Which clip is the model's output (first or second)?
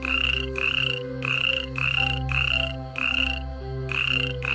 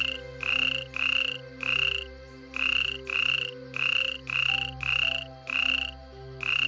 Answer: first